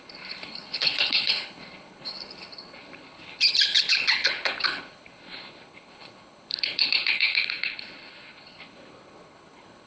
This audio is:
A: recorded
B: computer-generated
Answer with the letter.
B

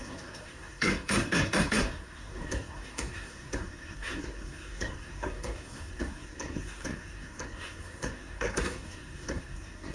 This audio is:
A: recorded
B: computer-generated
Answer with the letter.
B